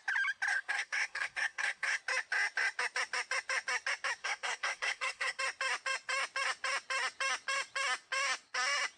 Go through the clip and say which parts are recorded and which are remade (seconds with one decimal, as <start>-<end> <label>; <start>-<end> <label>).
0.0-0.5 recorded; 0.5-2.0 remade; 2.0-4.2 recorded; 4.2-5.4 remade; 5.4-9.0 recorded